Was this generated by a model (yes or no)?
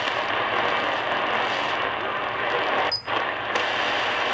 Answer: no